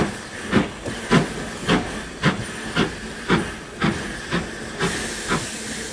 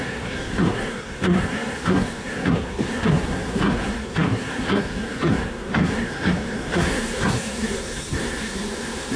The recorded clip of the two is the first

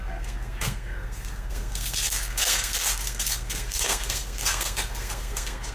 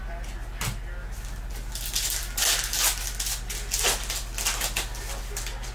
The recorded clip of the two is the second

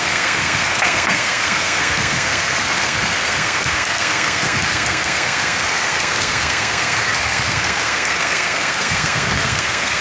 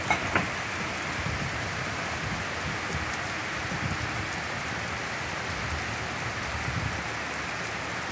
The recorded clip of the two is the second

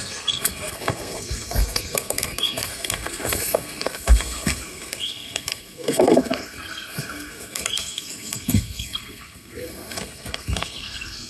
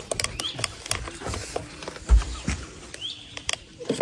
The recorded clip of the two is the second